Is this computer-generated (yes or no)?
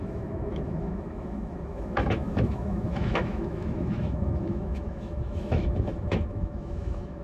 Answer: yes